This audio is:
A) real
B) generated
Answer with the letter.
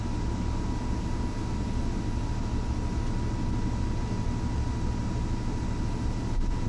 A